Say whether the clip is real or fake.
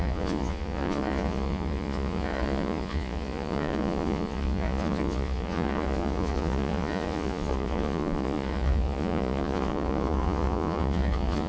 fake